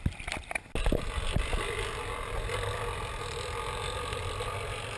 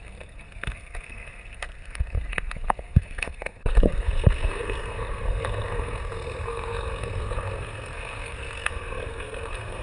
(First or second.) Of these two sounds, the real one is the first